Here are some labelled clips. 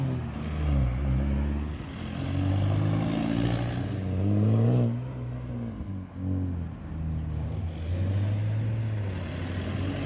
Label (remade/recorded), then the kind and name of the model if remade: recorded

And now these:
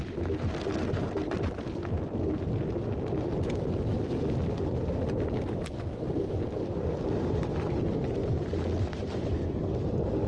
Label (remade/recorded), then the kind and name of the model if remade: recorded